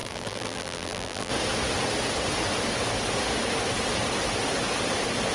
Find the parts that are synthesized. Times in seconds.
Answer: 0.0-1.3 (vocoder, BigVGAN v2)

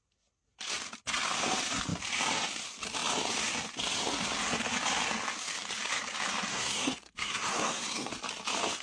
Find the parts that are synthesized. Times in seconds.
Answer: 6.5-8.1 (codec, SNAC)